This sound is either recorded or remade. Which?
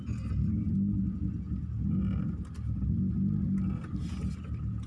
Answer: recorded